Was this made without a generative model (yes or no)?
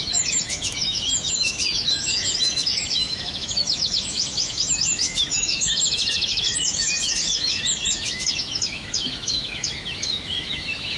no